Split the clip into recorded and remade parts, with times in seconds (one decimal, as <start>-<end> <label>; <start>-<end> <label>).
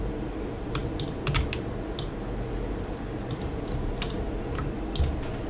0.0-5.5 recorded